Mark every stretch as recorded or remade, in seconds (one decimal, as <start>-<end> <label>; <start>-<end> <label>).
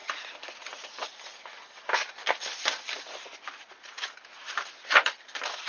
0.0-5.7 recorded